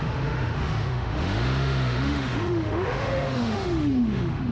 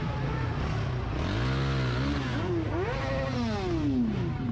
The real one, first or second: second